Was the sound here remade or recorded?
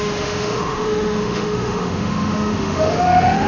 remade